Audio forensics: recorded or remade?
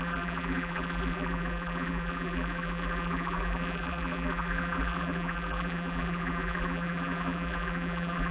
remade